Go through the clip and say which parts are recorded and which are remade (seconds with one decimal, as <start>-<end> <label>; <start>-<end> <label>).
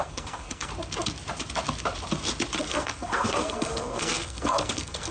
0.0-0.7 remade; 0.7-2.6 recorded; 2.6-5.1 remade